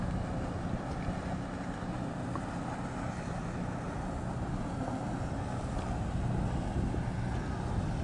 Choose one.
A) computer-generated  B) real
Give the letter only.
B